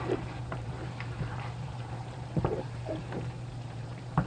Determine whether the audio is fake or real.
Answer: fake